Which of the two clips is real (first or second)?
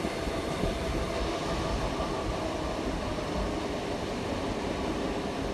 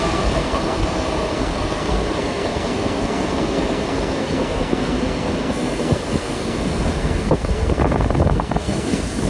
first